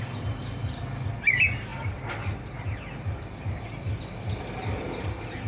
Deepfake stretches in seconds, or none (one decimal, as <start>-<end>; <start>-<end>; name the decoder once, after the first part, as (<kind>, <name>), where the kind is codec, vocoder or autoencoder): none